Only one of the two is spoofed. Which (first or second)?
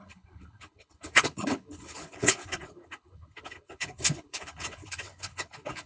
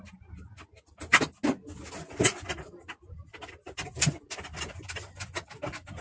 first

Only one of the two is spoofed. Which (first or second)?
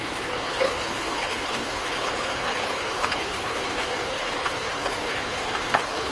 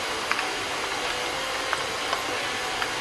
first